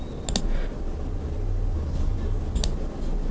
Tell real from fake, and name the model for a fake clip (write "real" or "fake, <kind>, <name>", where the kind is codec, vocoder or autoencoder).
real